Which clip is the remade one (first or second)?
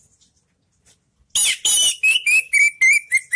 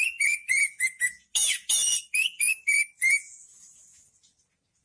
second